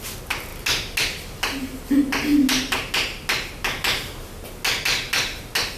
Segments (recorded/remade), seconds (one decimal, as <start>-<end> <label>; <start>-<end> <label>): 0.0-5.8 recorded